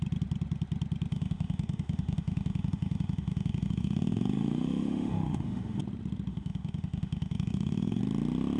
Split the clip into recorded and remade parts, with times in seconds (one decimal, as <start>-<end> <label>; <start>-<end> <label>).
0.0-1.1 recorded; 1.1-5.8 remade; 5.8-6.3 recorded; 6.3-8.0 remade; 8.0-8.6 recorded